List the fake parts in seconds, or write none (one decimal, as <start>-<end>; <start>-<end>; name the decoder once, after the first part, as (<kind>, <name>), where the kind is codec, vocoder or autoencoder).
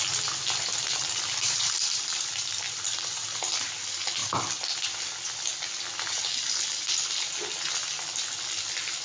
0.7-3.6 (vocoder, BigVGAN v2); 4.2-5.0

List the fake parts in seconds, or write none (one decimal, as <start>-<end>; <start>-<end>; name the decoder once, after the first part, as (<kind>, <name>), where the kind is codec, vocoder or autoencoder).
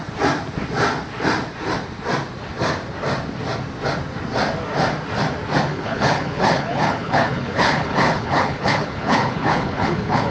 5.7-10.3 (codec, HILCodec)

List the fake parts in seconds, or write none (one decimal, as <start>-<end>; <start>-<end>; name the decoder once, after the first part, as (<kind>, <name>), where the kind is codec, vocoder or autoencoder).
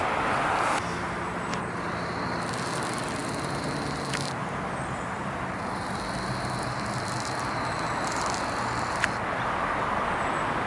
none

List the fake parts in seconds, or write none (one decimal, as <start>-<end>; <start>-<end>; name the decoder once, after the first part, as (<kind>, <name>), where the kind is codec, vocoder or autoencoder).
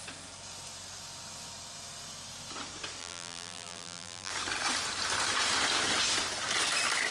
3.0-4.3 (vocoder, BigVGAN v2)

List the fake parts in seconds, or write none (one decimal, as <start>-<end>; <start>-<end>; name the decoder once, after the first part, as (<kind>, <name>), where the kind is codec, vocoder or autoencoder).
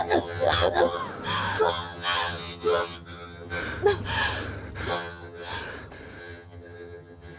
0.0-1.0 (vocoder, HiFi-GAN); 1.6-3.6; 4.9-5.5; 6.2-7.4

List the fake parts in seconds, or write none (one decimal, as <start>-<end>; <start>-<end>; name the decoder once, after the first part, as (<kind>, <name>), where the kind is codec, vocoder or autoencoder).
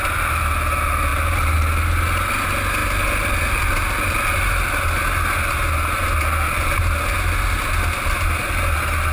none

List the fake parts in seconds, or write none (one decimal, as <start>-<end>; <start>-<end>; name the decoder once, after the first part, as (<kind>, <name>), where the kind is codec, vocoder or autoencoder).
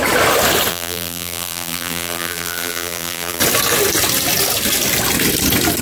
0.7-3.4 (vocoder, BigVGAN v2)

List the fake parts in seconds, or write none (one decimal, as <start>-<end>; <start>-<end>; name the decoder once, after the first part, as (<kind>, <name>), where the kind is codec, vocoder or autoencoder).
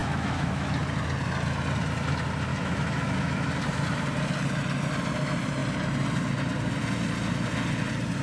0.0-0.7 (autoencoder, DAC-VAE); 2.5-3.5